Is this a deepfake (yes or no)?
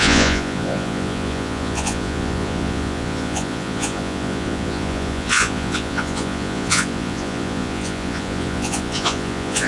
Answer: yes